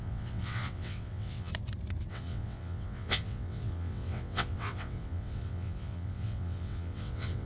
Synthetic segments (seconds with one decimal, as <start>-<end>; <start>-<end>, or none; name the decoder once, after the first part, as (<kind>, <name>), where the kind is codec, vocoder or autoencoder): 0.0-1.5 (vocoder, WaveNeXt); 2.1-7.5